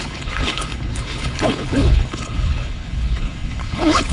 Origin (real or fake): fake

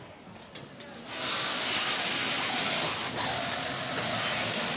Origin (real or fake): real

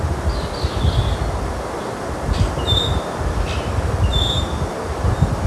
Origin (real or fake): real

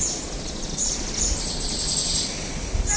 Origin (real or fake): real